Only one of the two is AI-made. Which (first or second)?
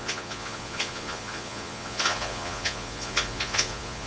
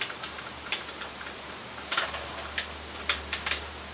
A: first